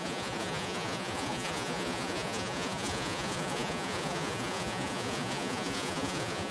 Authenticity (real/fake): fake